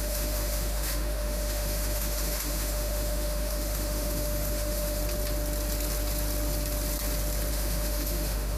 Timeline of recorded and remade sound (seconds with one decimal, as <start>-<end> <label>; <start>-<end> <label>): 0.0-5.0 remade; 5.0-7.5 recorded; 7.5-8.6 remade